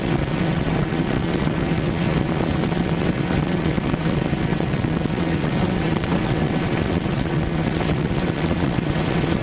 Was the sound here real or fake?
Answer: fake